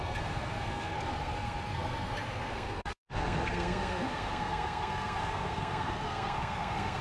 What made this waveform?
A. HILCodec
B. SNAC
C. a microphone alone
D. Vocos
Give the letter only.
B